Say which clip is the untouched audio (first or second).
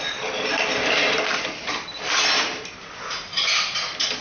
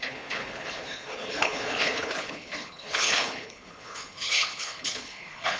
first